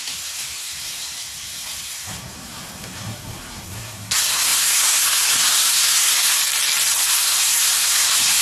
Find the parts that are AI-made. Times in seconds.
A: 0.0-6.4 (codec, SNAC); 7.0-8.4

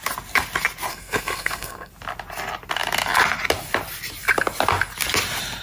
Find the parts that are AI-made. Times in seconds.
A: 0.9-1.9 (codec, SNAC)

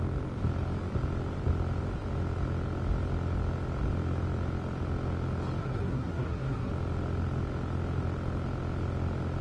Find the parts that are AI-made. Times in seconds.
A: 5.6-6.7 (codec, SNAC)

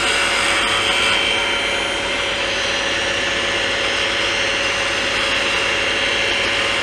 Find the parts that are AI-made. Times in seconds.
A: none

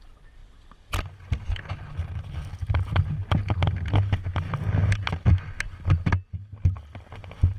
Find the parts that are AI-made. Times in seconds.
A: none

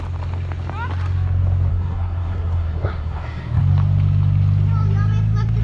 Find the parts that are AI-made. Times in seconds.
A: 1.7-3.6 (codec, SNAC)

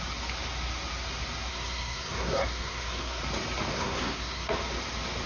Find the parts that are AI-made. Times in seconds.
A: 1.5-3.2 (codec, SNAC); 3.7-4.5

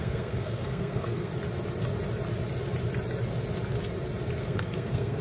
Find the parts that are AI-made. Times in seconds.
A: 0.0-1.3 (codec, SNAC); 4.4-5.2